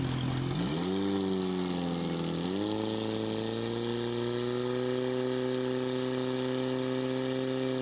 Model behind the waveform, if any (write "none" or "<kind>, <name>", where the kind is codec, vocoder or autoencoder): none